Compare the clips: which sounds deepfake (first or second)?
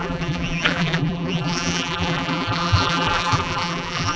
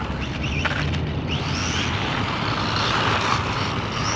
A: first